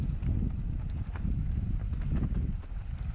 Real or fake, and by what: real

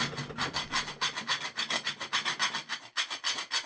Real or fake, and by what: real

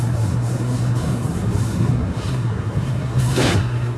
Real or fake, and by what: fake, codec, SNAC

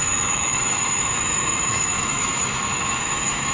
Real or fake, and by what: fake, autoencoder, DAC-VAE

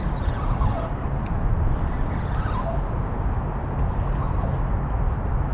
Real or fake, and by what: real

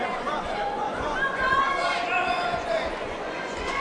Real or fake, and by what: fake, vocoder, Vocos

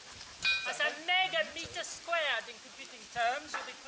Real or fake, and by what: real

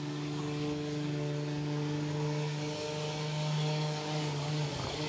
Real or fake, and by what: fake, codec, DAC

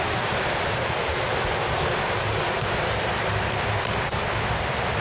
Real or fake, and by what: fake, vocoder, BigVGAN v2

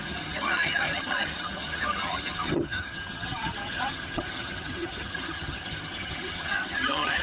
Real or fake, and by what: fake, vocoder, HiFi-GAN